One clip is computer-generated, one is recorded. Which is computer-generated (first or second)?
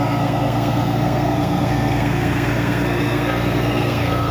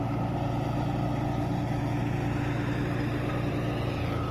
first